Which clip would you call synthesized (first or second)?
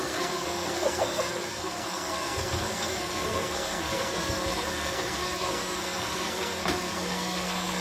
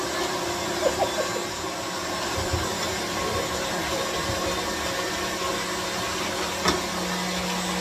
first